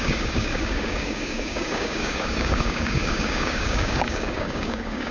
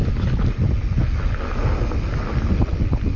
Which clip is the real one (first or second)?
second